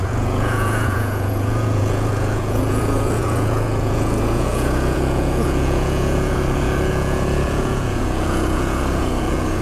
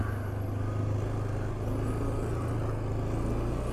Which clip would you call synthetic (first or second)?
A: first